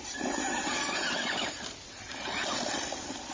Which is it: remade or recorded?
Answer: recorded